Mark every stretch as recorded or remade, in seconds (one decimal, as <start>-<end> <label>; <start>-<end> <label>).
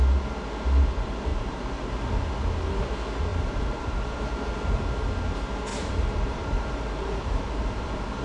0.0-1.3 recorded; 1.3-1.9 remade; 1.9-3.3 recorded; 3.3-4.5 remade; 4.5-5.7 recorded; 5.7-8.2 remade